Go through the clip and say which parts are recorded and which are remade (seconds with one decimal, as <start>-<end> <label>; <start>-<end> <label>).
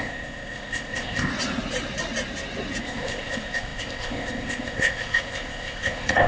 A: 0.0-1.3 remade; 1.3-2.8 recorded; 2.8-6.3 remade